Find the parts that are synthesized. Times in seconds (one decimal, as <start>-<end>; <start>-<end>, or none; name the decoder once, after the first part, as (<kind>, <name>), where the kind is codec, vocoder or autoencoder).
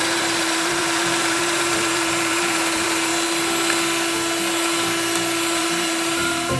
0.0-3.1 (vocoder, BigVGAN v2); 5.6-6.6